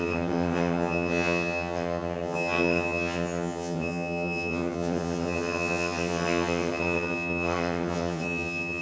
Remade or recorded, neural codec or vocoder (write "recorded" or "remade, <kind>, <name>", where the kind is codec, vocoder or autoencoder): remade, vocoder, HiFi-GAN